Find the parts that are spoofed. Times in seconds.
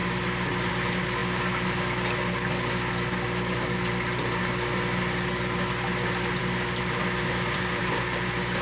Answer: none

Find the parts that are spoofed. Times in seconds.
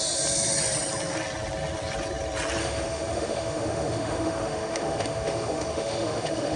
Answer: 2.6-6.6 (autoencoder, DAC-VAE)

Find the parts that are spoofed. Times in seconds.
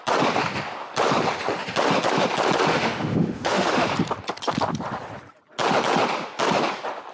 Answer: 2.7-3.9 (autoencoder, DAC-VAE)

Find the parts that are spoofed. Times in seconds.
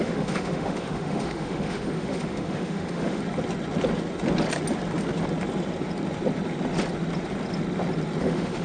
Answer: 0.0-3.2 (autoencoder, DAC-VAE); 8.2-8.6